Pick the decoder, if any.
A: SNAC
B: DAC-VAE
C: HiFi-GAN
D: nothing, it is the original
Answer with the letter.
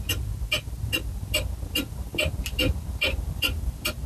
D